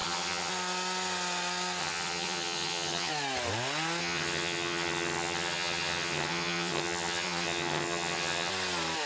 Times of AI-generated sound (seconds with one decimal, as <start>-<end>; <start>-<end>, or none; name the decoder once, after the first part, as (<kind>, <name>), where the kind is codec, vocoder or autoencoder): 0.0-0.5 (vocoder, HiFi-GAN); 1.8-3.1; 4.0-8.5